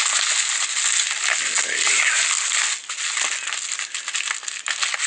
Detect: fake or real real